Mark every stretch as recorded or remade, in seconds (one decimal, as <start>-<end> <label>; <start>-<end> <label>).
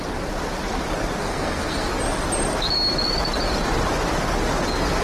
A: 0.0-1.2 recorded; 1.2-1.9 remade; 1.9-5.0 recorded